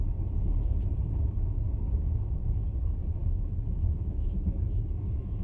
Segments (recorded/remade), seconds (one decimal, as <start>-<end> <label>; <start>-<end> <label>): 0.0-3.2 recorded; 3.2-5.4 remade